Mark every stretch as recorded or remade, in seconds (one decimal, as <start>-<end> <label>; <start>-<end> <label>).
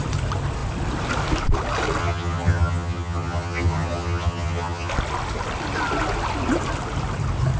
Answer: 0.0-2.0 recorded; 2.0-4.9 remade; 4.9-7.6 recorded